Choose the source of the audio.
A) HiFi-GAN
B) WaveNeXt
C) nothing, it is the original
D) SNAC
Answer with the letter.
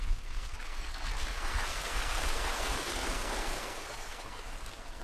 D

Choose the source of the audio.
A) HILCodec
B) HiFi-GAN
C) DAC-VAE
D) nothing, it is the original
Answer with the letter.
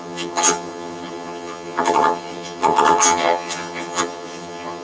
B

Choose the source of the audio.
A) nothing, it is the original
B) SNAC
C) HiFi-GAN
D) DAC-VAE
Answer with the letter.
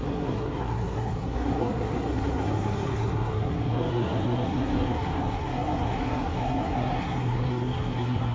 B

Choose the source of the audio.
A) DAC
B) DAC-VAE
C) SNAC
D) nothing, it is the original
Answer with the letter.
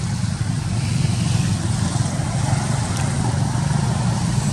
D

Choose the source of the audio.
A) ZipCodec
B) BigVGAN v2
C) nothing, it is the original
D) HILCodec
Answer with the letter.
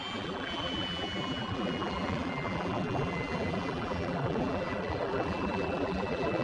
B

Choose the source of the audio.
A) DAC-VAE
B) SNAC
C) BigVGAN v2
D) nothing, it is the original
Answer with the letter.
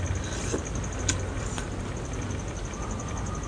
D